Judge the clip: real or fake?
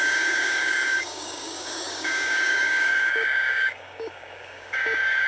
fake